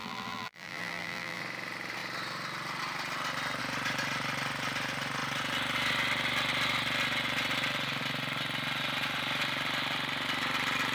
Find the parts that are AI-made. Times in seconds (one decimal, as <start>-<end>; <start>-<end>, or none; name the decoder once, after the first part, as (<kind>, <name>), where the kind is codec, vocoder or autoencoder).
0.0-1.4 (vocoder, BigVGAN v2)